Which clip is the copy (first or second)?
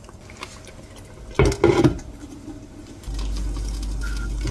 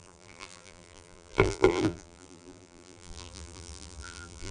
second